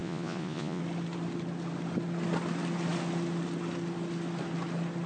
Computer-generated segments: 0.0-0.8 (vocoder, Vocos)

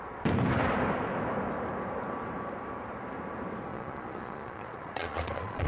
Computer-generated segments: 3.7-5.7 (vocoder, Vocos)